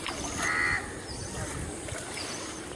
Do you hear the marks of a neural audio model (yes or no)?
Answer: no